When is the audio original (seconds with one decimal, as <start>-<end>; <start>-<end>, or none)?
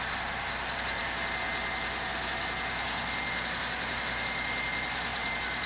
0.0-5.1